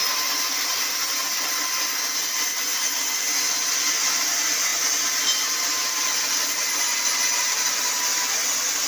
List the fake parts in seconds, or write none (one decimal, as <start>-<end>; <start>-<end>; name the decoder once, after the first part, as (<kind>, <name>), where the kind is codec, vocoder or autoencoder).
none